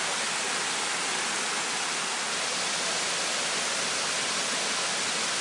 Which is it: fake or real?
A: real